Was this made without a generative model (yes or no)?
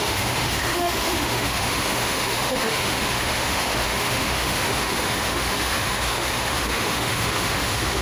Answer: no